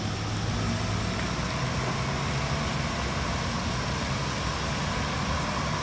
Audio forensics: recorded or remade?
recorded